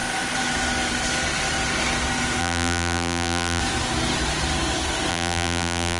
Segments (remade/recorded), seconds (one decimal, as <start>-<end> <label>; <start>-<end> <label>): 0.0-2.4 recorded; 2.4-3.6 remade; 3.6-5.1 recorded; 5.1-6.0 remade